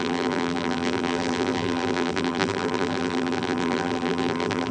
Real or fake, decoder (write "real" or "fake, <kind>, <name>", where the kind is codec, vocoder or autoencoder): fake, vocoder, BigVGAN v2